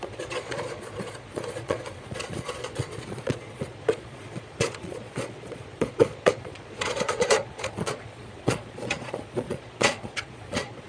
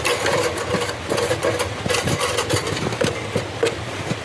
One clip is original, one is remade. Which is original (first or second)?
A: second